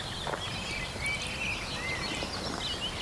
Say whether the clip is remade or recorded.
recorded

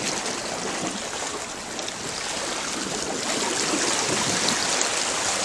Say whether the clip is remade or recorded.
recorded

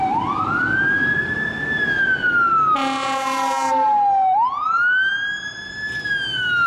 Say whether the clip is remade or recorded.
recorded